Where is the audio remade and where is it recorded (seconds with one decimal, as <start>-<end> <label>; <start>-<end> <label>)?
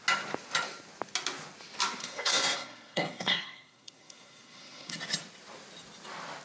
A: 0.0-2.0 recorded; 2.0-4.9 remade; 4.9-6.4 recorded